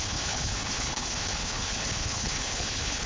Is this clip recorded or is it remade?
remade